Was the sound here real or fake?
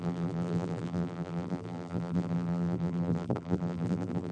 fake